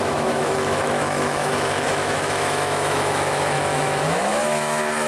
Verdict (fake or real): fake